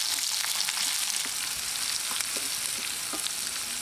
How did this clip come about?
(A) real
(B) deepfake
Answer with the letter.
A